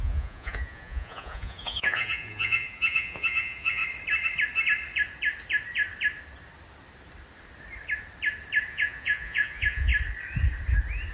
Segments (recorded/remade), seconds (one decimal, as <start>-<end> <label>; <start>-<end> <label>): 0.0-3.8 remade; 3.8-8.7 recorded; 8.7-9.9 remade; 9.9-11.1 recorded